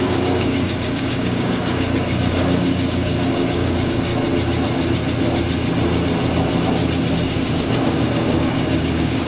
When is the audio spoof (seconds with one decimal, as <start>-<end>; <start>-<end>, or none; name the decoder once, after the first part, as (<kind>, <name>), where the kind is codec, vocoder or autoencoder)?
0.0-4.1 (codec, DAC); 7.1-9.3